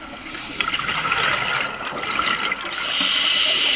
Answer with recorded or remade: recorded